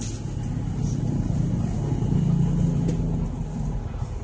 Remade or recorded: recorded